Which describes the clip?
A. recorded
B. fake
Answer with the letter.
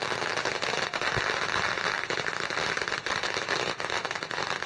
A